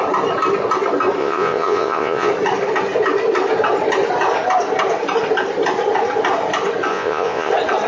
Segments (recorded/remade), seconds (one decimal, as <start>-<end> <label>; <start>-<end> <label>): 0.0-1.2 recorded; 1.2-2.3 remade; 2.3-6.9 recorded; 6.9-7.5 remade; 7.5-7.9 recorded